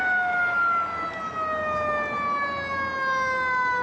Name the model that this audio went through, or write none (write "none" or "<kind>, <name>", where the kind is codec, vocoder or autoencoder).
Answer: none